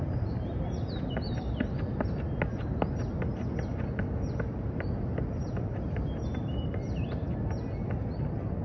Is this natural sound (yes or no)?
yes